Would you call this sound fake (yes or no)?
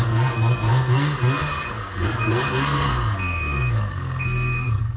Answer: yes